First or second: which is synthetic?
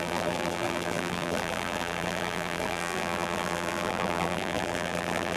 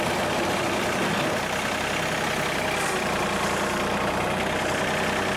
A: first